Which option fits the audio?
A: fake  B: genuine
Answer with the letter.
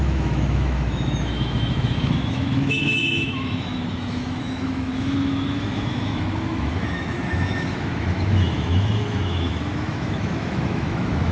A